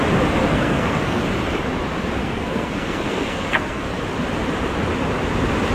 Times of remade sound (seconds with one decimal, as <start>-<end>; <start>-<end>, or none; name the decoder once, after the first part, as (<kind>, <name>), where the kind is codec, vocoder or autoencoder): 0.4-1.2 (codec, SNAC); 2.2-4.0